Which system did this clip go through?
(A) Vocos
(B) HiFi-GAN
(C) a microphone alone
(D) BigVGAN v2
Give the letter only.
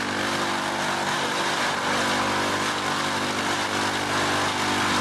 C